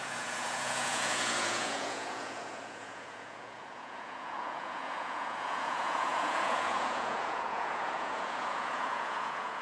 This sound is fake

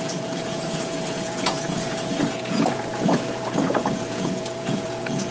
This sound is fake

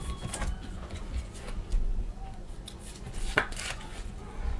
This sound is fake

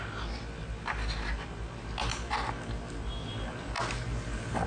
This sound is real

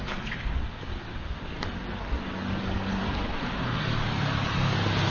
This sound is real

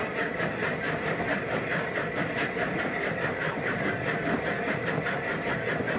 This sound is real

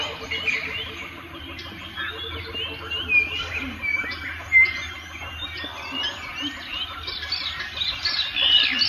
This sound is real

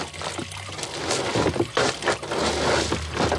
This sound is real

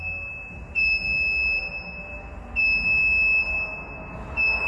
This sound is real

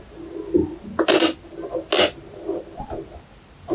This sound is real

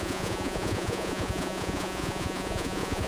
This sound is fake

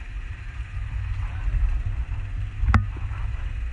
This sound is real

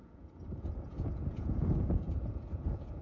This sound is fake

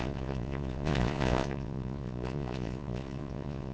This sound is fake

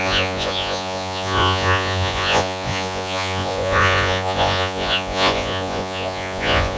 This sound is fake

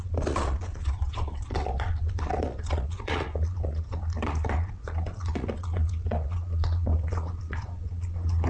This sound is fake